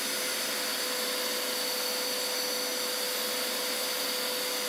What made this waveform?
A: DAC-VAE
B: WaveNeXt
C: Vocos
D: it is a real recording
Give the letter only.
D